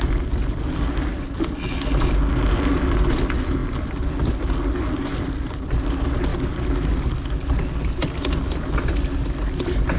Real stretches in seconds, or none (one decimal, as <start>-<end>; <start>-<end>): 0.0-10.0

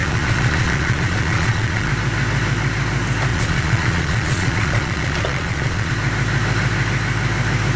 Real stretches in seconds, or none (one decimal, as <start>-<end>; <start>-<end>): 1.9-3.3; 5.9-7.8

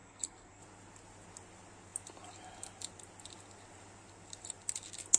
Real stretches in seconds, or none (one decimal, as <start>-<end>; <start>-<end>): 0.6-5.2

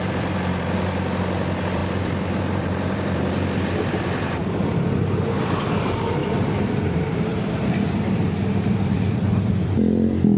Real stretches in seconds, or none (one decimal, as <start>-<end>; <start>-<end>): 1.8-2.4

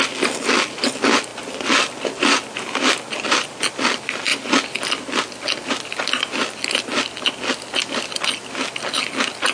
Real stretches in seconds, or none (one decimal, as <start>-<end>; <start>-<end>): 0.0-9.5